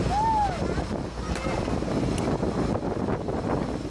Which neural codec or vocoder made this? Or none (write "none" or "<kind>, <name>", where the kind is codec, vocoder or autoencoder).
none